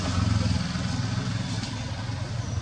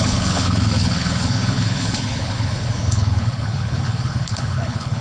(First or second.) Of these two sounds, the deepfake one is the second